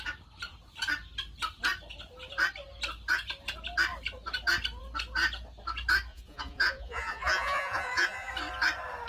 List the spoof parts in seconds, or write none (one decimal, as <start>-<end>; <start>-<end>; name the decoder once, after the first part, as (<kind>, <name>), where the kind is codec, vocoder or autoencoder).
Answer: 6.1-8.3 (vocoder, Vocos)